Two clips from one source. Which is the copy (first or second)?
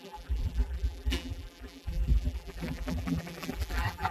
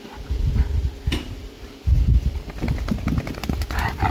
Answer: first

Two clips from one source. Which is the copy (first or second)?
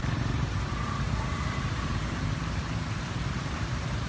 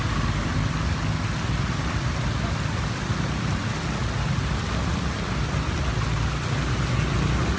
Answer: first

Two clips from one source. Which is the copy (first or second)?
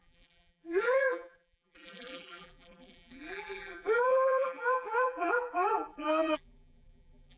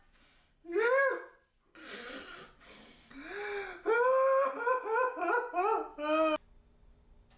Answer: first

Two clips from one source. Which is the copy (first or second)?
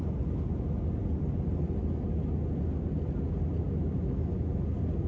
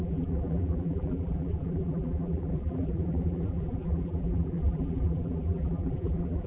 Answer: second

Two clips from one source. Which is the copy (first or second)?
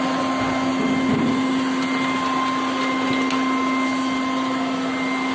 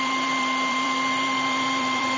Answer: second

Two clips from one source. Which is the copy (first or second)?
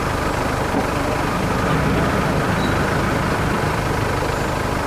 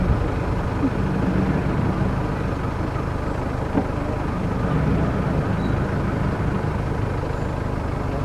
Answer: first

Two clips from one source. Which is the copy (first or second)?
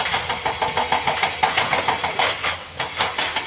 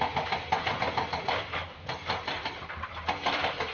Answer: second